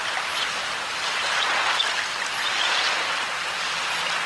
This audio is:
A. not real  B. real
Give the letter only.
B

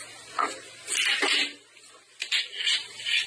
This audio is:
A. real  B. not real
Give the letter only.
A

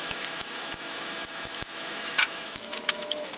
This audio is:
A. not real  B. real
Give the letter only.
A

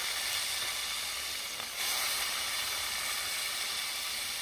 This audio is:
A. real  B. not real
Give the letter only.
A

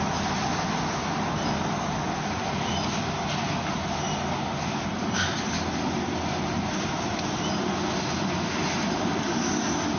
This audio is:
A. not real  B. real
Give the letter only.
B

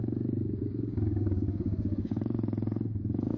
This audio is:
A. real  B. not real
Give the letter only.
B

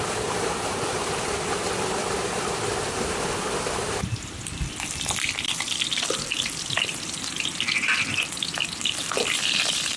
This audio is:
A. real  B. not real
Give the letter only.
A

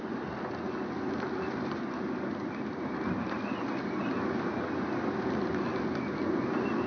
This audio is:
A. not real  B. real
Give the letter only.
B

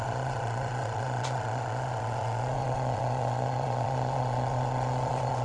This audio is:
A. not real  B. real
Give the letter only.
A